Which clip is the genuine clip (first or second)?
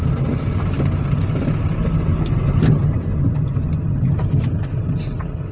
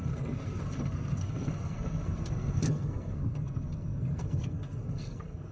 first